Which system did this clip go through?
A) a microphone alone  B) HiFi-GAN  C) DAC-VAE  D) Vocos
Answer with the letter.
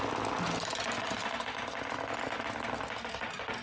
A